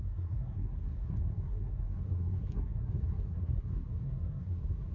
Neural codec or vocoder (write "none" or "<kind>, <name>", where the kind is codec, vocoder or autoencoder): codec, SNAC